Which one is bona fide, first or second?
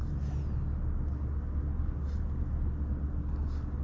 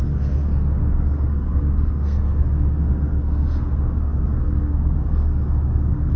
first